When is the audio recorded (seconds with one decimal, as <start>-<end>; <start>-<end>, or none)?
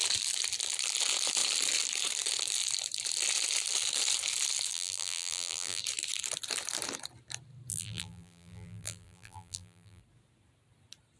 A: 0.0-4.7; 5.8-7.7; 10.0-11.2